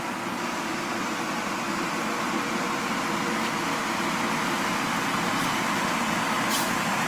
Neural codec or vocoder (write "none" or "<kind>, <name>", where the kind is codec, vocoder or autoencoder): none